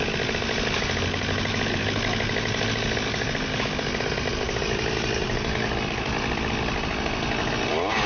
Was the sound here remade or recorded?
recorded